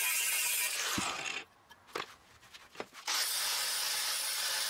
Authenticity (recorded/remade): recorded